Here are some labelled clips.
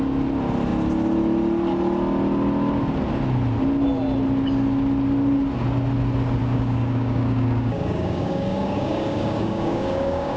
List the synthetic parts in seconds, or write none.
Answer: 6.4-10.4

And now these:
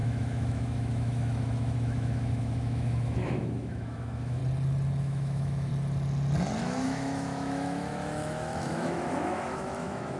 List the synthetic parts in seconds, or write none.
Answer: 0.0-4.4; 5.0-5.7; 6.6-10.2

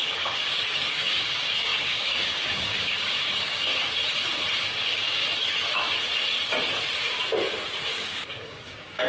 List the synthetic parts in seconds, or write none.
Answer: 0.0-3.7; 4.6-5.2; 7.9-9.1

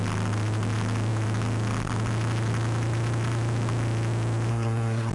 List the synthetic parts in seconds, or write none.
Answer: 4.5-5.1

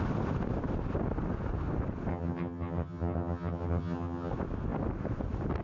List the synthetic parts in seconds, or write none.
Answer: 2.1-4.3

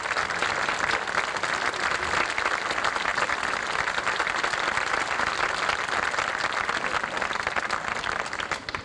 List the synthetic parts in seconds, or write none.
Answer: 3.1-5.3

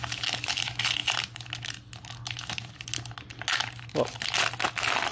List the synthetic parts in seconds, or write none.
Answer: none

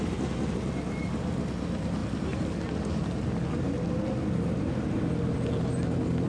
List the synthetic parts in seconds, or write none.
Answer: none